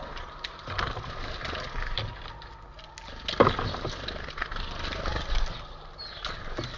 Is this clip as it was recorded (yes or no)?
yes